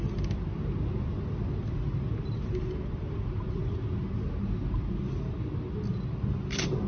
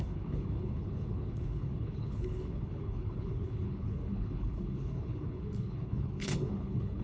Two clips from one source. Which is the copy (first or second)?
second